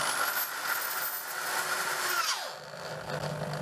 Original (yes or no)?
yes